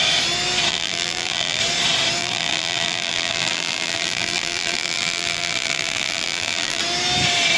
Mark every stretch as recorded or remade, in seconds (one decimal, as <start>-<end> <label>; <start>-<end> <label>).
0.0-0.7 recorded; 0.7-1.6 remade; 1.6-2.2 recorded; 2.2-6.8 remade; 6.8-7.6 recorded